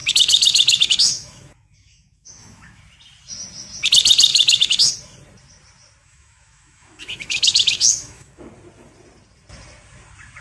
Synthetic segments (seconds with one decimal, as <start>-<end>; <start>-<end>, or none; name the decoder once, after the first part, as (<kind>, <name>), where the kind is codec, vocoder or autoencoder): 0.0-2.8 (autoencoder, DAC-VAE); 4.3-4.9; 6.0-8.5